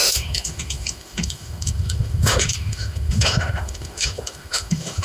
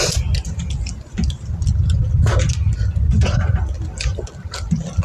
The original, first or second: second